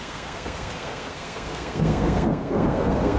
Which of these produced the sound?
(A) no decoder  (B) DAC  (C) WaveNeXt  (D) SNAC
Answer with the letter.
D